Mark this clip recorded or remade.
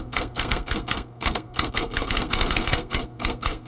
remade